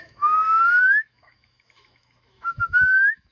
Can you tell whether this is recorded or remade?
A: remade